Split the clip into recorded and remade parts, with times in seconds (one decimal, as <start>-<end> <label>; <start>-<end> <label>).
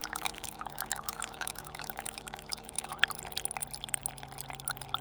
0.0-3.0 remade; 3.0-5.0 recorded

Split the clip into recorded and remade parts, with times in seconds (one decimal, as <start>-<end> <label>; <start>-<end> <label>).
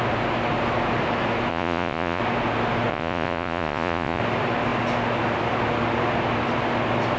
0.0-1.5 recorded; 1.5-2.2 remade; 2.2-2.9 recorded; 2.9-4.2 remade; 4.2-7.2 recorded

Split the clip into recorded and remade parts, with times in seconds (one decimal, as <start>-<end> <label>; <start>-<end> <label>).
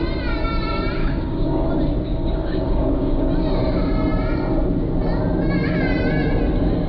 0.0-1.0 recorded; 1.0-1.7 remade; 1.7-2.1 recorded; 2.1-3.3 remade; 3.3-6.9 recorded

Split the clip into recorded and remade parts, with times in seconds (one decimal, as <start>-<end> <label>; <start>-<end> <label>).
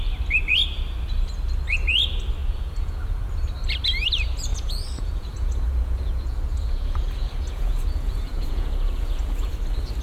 0.0-2.4 recorded; 2.4-3.3 remade; 3.3-4.5 recorded; 4.5-9.5 remade; 9.5-10.0 recorded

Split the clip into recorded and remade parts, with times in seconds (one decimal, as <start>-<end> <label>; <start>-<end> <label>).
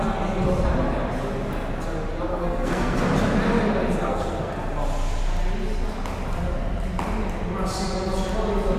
0.0-2.3 recorded; 2.3-3.0 remade; 3.0-4.0 recorded; 4.0-4.5 remade; 4.5-8.8 recorded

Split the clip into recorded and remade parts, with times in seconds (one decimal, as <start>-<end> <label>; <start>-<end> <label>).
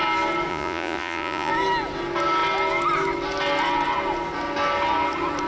0.0-0.5 recorded; 0.5-1.5 remade; 1.5-5.5 recorded